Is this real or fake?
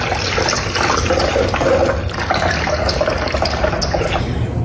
real